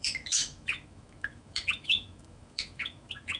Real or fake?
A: fake